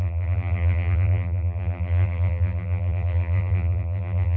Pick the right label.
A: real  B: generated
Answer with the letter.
B